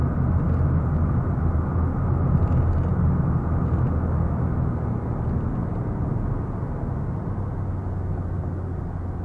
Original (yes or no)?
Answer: yes